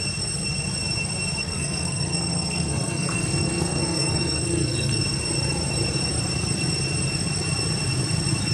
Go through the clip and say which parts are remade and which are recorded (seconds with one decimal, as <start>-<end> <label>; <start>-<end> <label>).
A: 0.0-1.4 recorded; 1.4-5.0 remade; 5.0-8.5 recorded